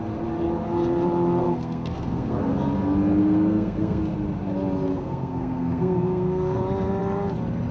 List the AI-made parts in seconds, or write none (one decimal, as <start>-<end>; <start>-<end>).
1.4-2.4; 3.2-4.0; 4.9-6.6